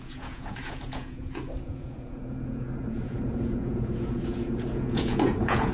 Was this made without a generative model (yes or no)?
no